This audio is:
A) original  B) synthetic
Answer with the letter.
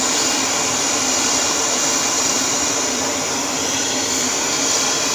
B